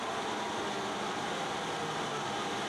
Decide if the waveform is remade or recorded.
recorded